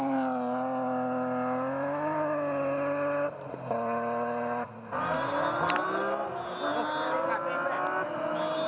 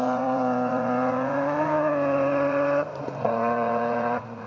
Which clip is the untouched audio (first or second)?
first